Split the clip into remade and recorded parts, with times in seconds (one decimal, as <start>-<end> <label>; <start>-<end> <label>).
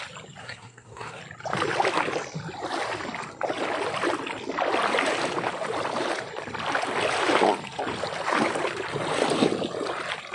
0.0-0.4 recorded; 0.4-1.2 remade; 1.2-10.3 recorded